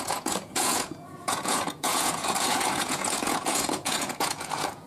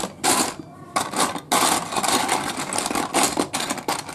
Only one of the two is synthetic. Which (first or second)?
first